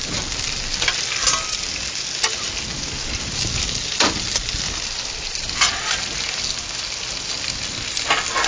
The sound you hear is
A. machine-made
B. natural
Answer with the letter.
B